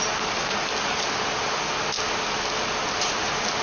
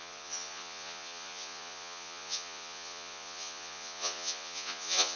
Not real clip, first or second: second